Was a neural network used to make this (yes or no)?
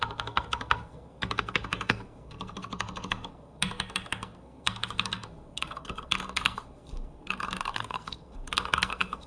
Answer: yes